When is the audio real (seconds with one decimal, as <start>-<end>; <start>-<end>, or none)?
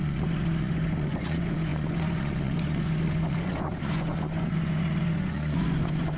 none